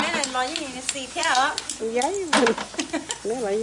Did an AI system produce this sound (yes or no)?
no